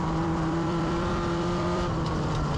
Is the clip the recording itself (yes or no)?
no